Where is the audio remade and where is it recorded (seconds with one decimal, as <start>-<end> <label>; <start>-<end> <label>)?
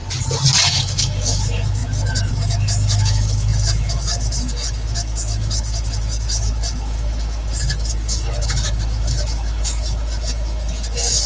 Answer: 0.0-0.7 recorded; 0.7-11.3 remade